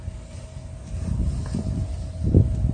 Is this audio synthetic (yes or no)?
no